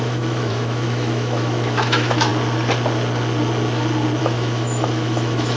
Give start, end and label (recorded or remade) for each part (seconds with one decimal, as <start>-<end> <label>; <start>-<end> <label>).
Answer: 0.0-2.3 remade; 2.3-4.2 recorded; 4.2-5.6 remade